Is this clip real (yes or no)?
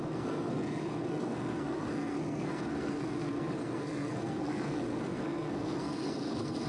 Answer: no